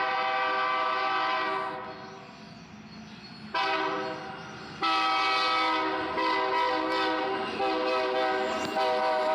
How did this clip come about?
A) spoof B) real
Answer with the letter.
B